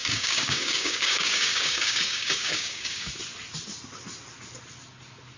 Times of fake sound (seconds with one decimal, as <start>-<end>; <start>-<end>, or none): 0.0-3.1